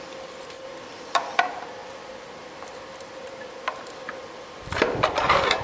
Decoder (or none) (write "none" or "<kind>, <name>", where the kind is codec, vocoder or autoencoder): vocoder, BigVGAN v2